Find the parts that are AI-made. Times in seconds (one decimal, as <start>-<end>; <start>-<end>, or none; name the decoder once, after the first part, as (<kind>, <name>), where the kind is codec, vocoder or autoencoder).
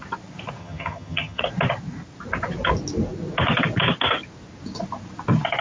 0.6-1.4 (vocoder, HiFi-GAN)